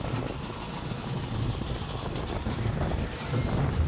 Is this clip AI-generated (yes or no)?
no